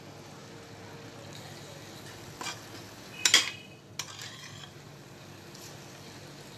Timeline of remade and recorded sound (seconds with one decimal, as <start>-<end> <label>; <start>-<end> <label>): 0.0-4.2 recorded; 4.2-5.2 remade; 5.2-6.6 recorded